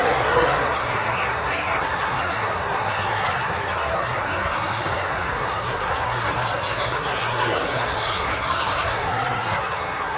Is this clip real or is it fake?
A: fake